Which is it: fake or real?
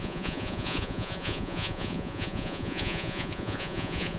fake